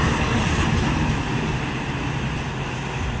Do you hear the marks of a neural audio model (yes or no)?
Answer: no